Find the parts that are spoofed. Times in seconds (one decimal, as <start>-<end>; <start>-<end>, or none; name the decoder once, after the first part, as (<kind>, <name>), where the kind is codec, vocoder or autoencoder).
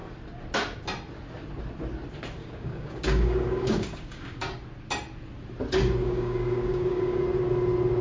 2.4-4.5 (codec, DAC); 6.0-7.2